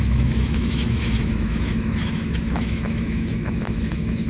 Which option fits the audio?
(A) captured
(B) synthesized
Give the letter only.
B